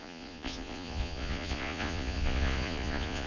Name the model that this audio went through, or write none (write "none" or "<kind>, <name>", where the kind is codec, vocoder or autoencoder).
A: vocoder, Vocos